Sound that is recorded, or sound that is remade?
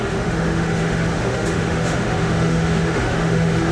remade